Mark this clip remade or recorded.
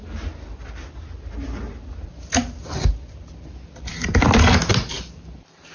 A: recorded